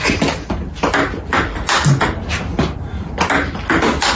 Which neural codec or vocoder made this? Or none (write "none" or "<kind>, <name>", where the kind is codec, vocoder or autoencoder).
none